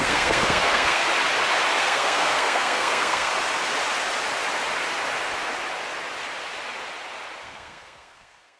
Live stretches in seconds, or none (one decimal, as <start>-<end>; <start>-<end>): 1.0-1.8; 3.3-7.4